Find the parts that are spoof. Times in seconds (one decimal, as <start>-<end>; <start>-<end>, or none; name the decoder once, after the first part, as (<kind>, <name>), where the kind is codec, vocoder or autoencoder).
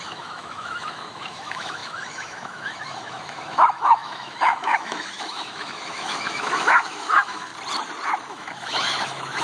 0.0-7.5 (autoencoder, DAC-VAE); 8.3-9.4